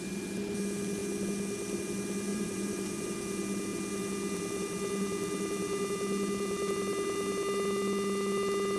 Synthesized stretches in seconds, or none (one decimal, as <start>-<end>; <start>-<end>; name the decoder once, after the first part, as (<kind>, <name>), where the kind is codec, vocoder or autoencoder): 2.3-3.1 (vocoder, Vocos)

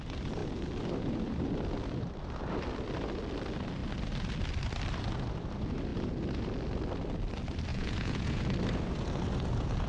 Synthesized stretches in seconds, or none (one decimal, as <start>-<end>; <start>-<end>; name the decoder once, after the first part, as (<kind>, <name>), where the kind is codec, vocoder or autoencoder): 7.7-8.4 (vocoder, Vocos)

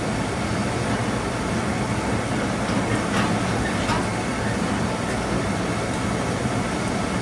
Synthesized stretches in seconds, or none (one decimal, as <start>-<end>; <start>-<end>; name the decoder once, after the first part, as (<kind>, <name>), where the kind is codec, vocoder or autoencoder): none

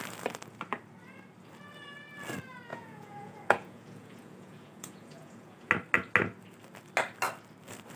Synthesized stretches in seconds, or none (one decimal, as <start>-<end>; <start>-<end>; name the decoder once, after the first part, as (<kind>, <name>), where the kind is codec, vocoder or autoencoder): 2.7-5.7 (vocoder, Vocos)